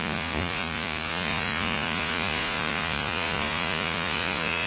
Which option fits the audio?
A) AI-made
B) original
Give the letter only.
A